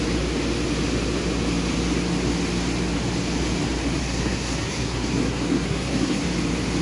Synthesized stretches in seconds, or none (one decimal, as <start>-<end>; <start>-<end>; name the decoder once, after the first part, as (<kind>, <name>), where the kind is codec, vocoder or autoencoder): 4.0-6.2 (codec, SNAC)

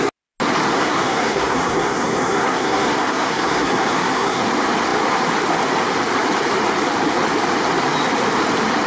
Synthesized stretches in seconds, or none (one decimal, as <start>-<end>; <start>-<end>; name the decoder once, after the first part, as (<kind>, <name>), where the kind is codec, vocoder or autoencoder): 0.7-4.4 (codec, SNAC)

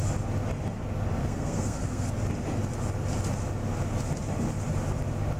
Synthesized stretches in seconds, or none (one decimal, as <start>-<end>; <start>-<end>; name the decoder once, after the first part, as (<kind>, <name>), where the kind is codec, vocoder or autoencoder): 1.2-2.1 (codec, SNAC)

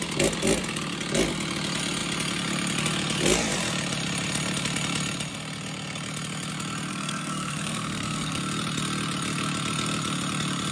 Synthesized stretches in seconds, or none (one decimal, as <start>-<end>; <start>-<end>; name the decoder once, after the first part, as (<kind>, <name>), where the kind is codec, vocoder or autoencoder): 6.9-8.4 (codec, SNAC)

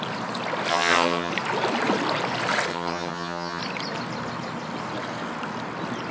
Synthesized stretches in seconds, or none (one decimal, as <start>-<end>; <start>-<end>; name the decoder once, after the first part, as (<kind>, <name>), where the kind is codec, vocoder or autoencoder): 0.7-1.3 (vocoder, HiFi-GAN); 2.7-3.6

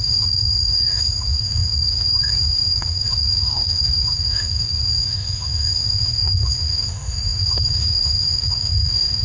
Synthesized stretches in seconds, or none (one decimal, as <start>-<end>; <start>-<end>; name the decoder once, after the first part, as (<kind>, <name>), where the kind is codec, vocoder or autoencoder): 0.0-9.2 (autoencoder, DAC-VAE)